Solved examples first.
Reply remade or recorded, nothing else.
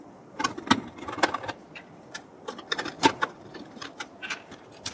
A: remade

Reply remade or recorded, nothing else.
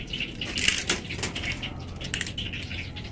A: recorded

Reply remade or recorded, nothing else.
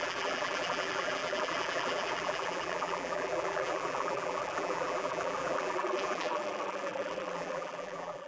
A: remade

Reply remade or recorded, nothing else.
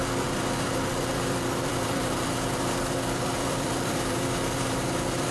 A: remade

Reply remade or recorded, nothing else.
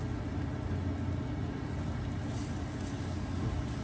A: recorded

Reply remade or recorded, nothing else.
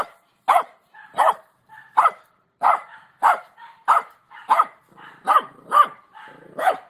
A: remade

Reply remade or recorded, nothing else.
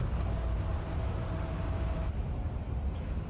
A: recorded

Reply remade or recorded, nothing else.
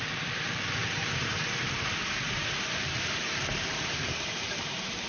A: remade